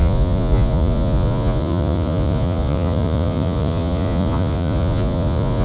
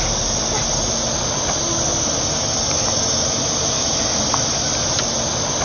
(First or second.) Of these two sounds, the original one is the second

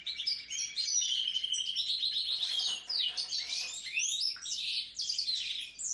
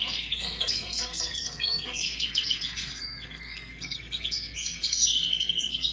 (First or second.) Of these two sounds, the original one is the first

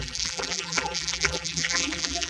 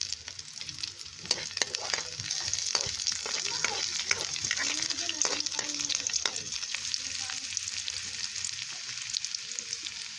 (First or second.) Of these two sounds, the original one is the second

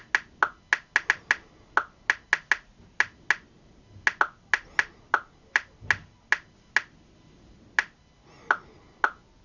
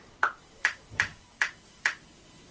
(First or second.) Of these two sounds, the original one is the first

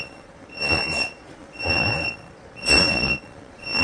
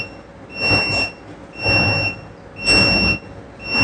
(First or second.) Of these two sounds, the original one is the second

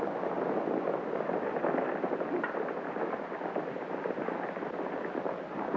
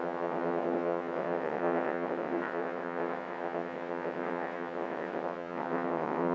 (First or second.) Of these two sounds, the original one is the first